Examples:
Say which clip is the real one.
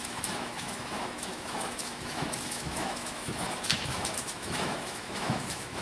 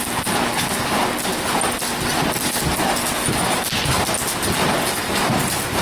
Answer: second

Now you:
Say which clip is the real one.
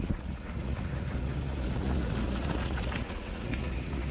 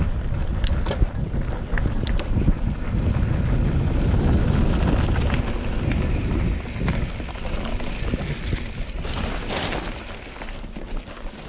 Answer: second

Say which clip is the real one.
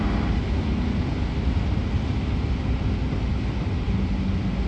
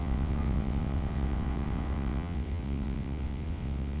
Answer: first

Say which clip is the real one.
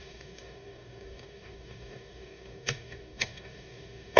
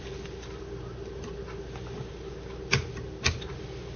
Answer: second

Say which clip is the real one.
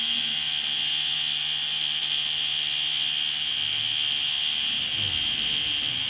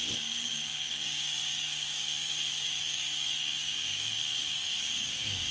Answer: first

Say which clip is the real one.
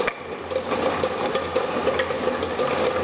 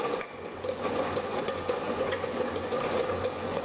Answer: first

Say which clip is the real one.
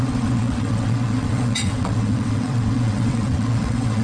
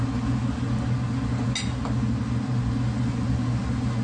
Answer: second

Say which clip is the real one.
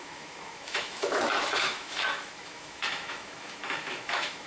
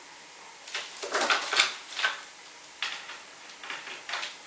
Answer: second